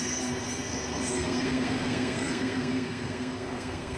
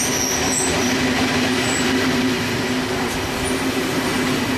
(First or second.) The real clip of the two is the second